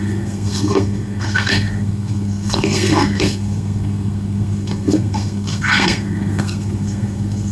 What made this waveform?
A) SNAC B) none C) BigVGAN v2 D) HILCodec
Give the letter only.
A